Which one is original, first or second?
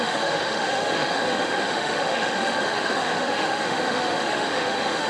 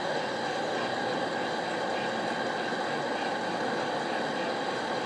second